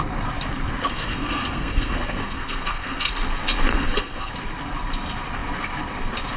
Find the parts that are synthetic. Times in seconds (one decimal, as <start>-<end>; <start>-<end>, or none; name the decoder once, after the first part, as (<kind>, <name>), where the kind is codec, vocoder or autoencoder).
0.9-3.1 (codec, SNAC); 3.7-4.3